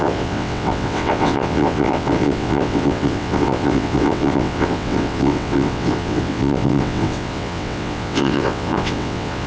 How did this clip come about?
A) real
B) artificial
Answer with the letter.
B